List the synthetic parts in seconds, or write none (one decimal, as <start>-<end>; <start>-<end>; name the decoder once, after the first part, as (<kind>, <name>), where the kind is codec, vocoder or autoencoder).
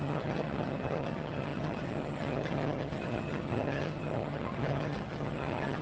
0.0-5.8 (vocoder, HiFi-GAN)